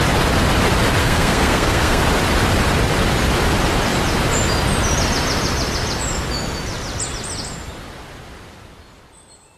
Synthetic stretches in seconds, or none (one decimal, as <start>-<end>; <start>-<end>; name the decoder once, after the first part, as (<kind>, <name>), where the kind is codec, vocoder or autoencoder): 1.0-2.0 (codec, SNAC)